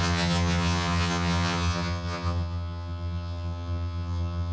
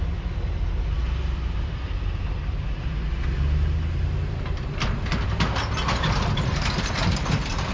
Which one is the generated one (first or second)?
first